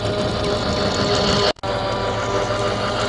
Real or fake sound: real